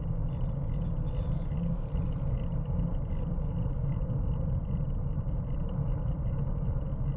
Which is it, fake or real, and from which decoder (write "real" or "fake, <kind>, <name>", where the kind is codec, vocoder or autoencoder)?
real